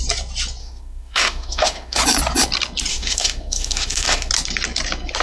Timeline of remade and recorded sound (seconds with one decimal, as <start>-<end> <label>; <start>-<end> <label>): 0.0-0.6 recorded; 0.6-2.0 remade; 2.0-2.9 recorded; 2.9-4.3 remade; 4.3-5.2 recorded